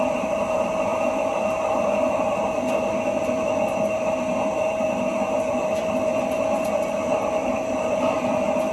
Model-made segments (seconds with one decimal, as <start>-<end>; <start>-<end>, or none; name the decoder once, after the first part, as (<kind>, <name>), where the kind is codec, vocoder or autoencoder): 0.0-8.7 (vocoder, BigVGAN v2)